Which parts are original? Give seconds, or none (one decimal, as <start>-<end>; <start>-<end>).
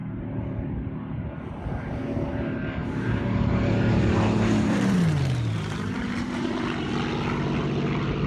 1.3-2.8; 6.9-8.3